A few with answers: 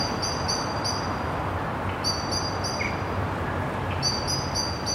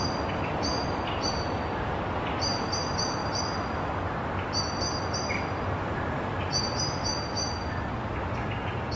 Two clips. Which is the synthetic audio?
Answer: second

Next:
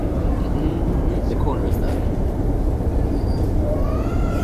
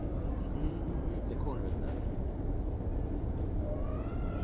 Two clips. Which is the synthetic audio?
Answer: first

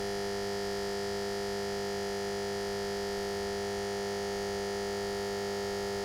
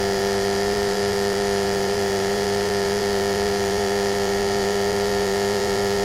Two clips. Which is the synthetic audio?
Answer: second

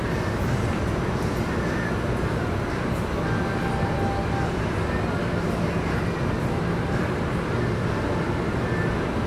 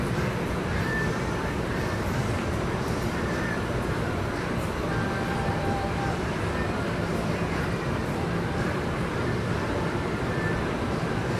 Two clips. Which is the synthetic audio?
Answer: second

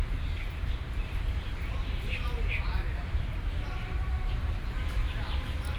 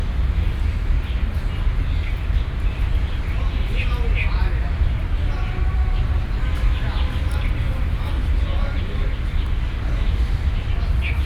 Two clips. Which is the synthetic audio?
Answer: first